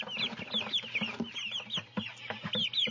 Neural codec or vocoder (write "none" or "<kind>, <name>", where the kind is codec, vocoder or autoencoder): none